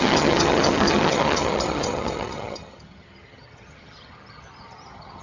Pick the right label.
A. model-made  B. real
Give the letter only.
A